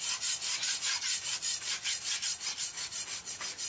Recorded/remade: remade